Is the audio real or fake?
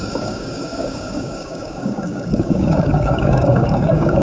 fake